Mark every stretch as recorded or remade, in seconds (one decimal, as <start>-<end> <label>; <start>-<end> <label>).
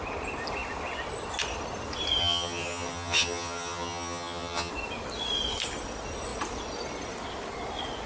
0.0-2.2 recorded; 2.2-4.7 remade; 4.7-8.1 recorded